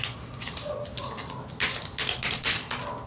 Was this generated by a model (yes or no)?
no